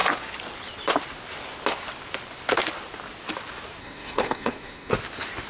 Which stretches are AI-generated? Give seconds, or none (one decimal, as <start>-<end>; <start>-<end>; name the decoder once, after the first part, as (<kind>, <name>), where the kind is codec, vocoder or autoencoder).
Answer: 3.8-4.9 (codec, SNAC)